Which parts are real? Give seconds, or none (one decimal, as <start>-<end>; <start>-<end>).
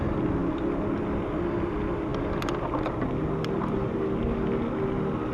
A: 0.0-5.3